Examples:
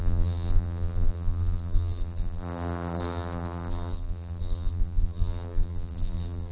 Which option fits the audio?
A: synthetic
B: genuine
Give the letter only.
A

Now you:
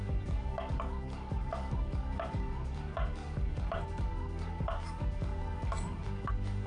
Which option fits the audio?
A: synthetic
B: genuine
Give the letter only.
A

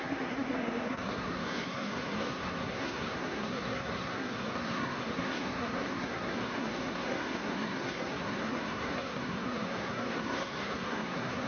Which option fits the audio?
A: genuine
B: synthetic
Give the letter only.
B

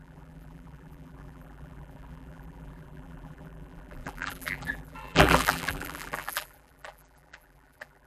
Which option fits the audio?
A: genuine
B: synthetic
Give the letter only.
B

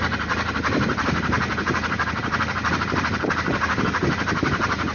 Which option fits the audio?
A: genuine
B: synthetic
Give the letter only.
B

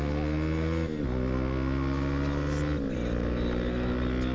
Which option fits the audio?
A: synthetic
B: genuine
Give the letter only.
B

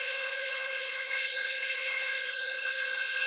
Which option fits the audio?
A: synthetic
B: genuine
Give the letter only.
A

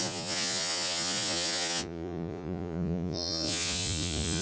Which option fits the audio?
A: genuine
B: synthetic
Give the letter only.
B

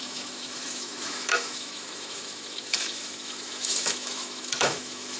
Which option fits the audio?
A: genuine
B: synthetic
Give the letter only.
B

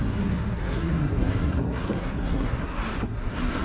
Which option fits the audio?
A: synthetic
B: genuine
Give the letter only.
A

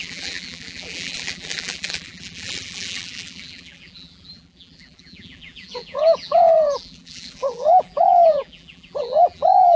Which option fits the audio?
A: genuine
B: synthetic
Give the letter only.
B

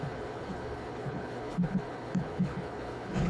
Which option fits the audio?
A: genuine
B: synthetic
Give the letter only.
B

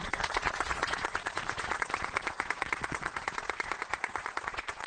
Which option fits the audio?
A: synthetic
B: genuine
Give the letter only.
A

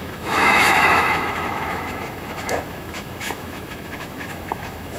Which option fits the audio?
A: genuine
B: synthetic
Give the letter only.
B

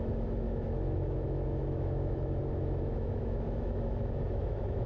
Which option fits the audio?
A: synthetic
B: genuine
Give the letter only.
A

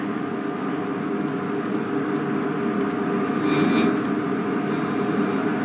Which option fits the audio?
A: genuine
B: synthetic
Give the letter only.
A